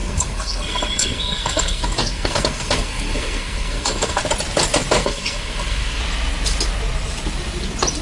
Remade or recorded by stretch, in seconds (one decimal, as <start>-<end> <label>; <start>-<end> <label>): 0.0-4.2 remade; 4.2-5.0 recorded; 5.0-6.0 remade; 6.0-8.0 recorded